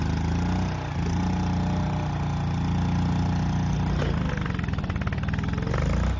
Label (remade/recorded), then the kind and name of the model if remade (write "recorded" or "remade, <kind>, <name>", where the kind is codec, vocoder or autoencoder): recorded